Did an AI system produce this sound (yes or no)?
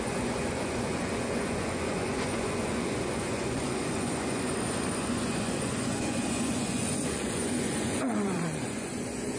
yes